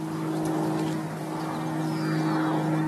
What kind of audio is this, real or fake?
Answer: real